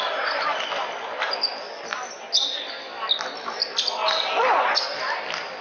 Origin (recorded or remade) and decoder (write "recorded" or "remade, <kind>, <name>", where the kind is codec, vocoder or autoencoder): recorded